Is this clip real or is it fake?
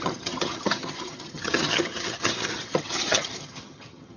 fake